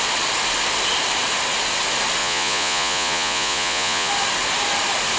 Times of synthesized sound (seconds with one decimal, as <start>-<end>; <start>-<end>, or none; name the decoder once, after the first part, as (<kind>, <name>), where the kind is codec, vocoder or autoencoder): 2.2-4.1 (vocoder, Vocos)